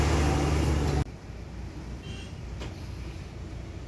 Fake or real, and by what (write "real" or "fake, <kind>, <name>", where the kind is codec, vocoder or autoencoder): real